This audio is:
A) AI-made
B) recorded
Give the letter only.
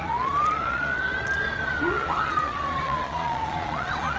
A